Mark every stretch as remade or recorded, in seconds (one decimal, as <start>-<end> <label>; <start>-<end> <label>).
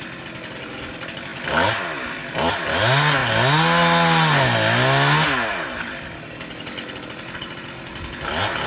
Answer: 0.0-8.7 recorded